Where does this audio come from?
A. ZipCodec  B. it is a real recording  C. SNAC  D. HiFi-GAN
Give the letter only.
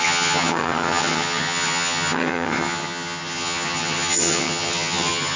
D